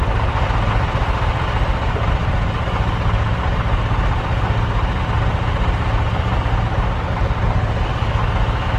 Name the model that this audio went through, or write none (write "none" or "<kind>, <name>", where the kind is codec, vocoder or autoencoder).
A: none